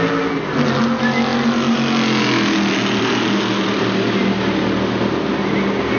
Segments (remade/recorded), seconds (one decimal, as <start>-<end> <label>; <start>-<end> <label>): 0.0-6.0 recorded